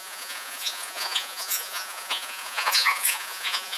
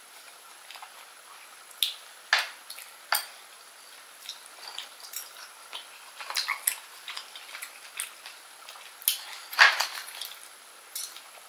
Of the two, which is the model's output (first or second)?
first